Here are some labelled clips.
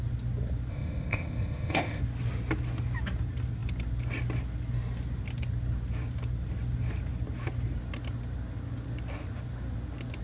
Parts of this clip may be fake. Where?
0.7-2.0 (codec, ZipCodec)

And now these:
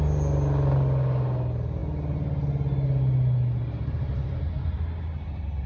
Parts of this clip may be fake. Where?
none

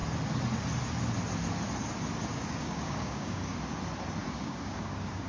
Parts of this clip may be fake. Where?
2.3-3.4 (codec, DAC); 4.2-5.3

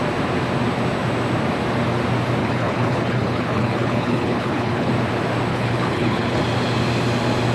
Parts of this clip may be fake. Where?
2.4-4.9 (codec, HILCodec); 5.5-6.4

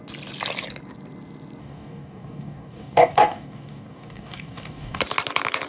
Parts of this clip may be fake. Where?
1.6-5.0 (codec, DAC)